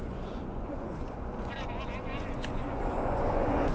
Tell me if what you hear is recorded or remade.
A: remade